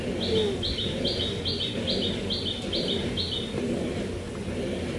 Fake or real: real